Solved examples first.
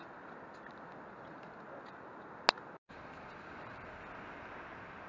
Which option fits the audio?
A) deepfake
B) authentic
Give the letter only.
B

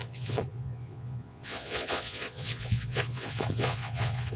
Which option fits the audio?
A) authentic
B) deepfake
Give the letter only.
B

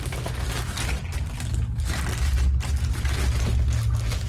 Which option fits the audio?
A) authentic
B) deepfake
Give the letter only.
A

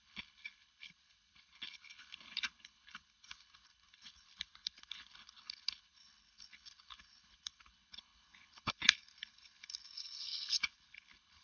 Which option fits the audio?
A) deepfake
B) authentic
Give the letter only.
A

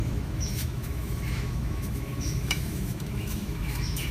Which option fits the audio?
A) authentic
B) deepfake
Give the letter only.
B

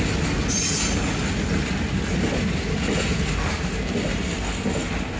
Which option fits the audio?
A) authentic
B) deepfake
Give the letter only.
A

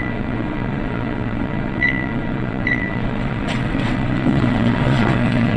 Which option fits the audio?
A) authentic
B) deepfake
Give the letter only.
B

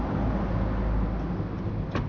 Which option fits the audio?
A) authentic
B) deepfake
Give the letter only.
A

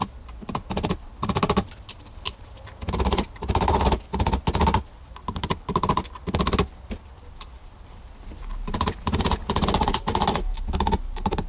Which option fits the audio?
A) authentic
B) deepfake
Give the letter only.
A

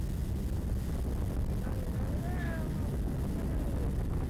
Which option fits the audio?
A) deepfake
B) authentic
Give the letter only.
B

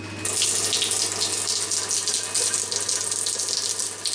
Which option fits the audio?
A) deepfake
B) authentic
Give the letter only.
B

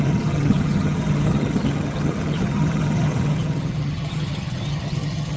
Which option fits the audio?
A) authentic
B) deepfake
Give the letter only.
B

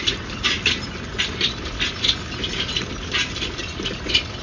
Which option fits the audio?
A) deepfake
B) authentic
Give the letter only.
B